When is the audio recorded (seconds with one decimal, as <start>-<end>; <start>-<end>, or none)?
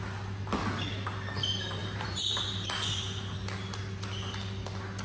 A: 0.0-1.8; 2.4-5.0